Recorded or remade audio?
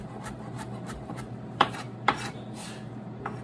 remade